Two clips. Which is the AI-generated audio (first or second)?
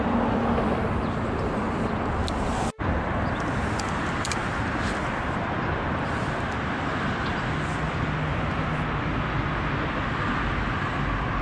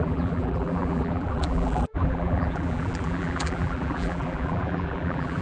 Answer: second